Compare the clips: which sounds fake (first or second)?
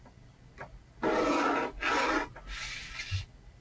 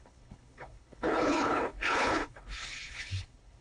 second